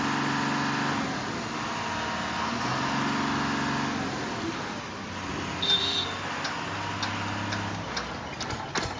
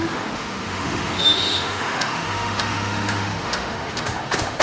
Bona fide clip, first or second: first